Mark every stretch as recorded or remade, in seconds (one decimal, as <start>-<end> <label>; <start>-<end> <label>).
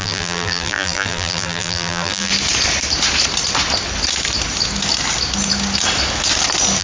0.0-2.3 remade; 2.3-6.8 recorded